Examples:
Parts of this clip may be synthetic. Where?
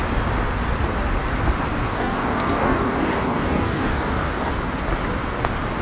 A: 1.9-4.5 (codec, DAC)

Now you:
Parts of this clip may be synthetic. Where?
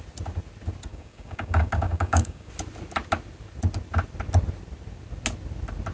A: 0.9-2.5 (codec, DAC)